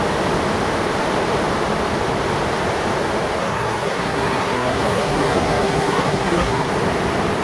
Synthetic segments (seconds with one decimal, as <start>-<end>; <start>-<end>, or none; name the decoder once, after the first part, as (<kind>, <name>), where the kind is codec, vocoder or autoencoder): 3.4-6.7 (codec, SNAC)

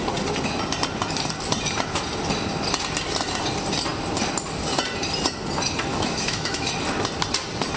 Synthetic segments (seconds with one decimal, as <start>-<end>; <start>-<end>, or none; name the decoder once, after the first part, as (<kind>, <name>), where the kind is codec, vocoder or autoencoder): 5.9-6.7 (autoencoder, DAC-VAE)

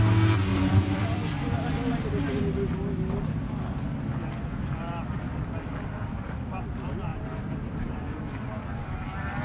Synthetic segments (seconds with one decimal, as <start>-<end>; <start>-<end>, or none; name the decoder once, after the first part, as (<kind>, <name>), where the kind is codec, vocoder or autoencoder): 0.5-2.4 (vocoder, BigVGAN v2); 7.1-9.4

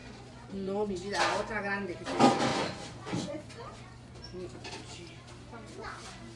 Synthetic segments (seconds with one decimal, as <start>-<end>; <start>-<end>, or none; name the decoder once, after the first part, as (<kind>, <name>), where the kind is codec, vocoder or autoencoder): 0.0-0.9 (vocoder, Vocos); 2.5-4.2

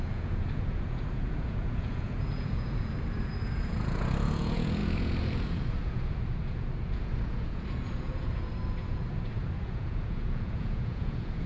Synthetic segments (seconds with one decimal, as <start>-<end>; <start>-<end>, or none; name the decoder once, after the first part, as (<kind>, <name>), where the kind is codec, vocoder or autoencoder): 0.0-11.5 (vocoder, Vocos)

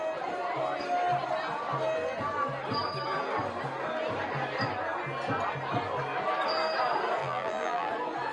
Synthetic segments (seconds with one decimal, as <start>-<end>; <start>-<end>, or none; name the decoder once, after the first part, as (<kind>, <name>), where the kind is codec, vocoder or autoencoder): 7.2-7.9 (vocoder, BigVGAN v2)

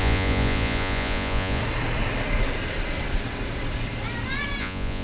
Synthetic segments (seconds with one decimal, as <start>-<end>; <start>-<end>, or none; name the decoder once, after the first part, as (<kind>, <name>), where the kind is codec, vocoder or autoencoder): 0.0-1.6 (vocoder, Vocos); 4.6-5.0